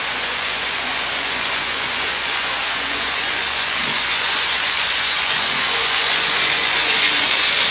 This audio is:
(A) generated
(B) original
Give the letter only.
A